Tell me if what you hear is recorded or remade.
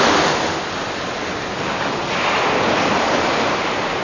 recorded